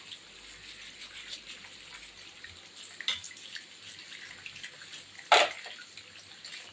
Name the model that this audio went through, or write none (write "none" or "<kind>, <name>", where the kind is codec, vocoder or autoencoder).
none